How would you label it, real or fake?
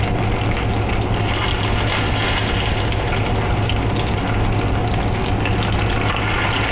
real